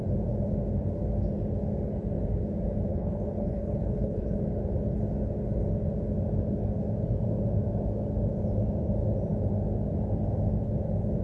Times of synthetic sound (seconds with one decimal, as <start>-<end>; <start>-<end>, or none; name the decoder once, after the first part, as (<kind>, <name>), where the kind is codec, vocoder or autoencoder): 2.9-4.4 (codec, HILCodec)